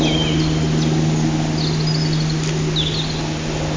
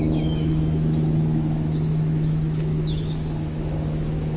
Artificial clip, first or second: second